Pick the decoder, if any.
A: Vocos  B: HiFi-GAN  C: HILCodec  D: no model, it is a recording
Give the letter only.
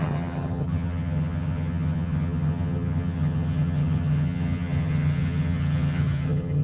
B